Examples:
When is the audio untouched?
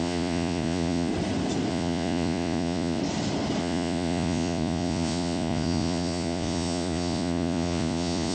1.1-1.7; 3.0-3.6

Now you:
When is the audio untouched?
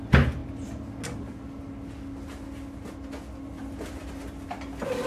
0.0-5.1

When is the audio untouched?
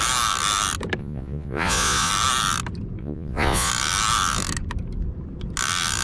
0.0-1.0; 2.1-3.0; 3.7-6.0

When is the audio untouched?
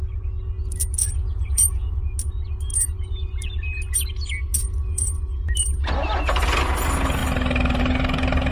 0.0-1.0; 2.0-4.6; 5.2-8.5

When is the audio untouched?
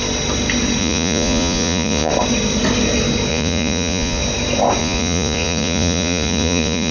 0.0-0.8; 2.1-3.3; 4.2-4.8